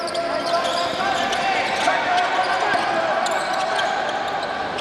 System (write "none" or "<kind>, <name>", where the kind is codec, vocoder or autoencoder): none